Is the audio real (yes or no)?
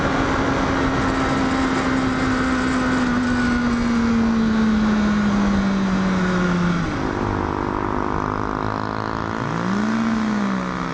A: yes